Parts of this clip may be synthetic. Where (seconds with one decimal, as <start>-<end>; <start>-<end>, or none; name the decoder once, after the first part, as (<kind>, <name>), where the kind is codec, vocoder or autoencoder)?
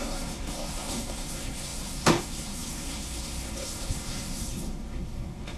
0.0-5.6 (codec, SNAC)